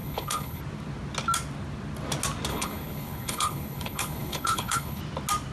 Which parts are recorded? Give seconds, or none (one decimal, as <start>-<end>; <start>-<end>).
0.6-2.5; 5.0-5.5